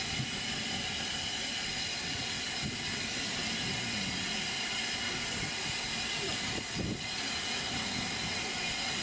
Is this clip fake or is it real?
fake